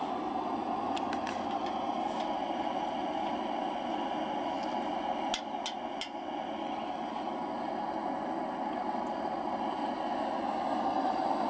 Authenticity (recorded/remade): recorded